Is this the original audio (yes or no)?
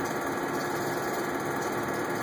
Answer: yes